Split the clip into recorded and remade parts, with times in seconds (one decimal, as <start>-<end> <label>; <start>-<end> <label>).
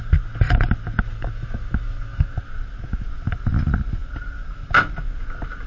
0.0-1.1 recorded; 1.1-2.3 remade; 2.3-5.7 recorded